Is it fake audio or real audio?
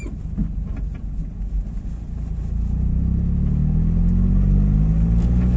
real